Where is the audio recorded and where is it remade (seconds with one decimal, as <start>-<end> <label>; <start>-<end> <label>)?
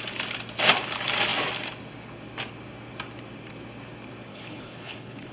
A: 0.0-4.3 recorded; 4.3-5.3 remade